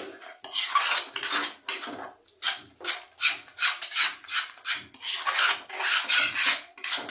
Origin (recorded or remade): recorded